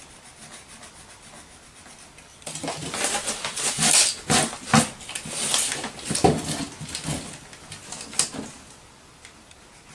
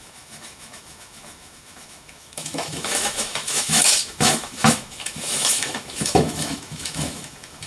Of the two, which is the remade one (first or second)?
second